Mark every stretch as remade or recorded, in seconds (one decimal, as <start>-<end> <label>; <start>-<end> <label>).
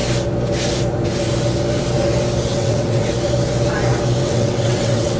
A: 0.0-2.5 recorded; 2.5-3.1 remade; 3.1-4.2 recorded; 4.2-5.2 remade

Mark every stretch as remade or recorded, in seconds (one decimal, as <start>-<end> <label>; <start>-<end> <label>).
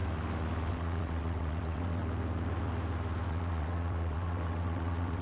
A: 0.0-0.7 recorded; 0.7-2.0 remade; 2.0-3.3 recorded; 3.3-5.2 remade